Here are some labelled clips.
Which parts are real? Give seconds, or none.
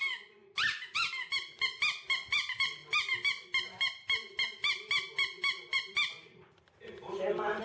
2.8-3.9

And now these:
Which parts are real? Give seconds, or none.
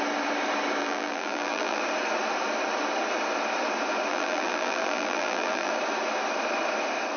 0.0-0.8; 1.8-4.1; 5.7-7.2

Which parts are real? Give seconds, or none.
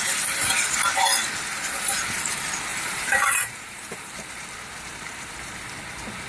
0.0-1.5; 2.1-2.7; 4.1-6.3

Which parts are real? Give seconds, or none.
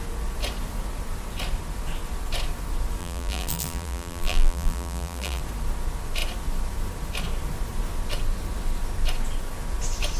0.0-3.0; 5.4-10.2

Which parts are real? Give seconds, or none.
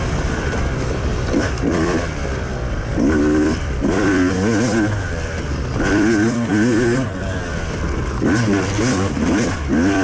none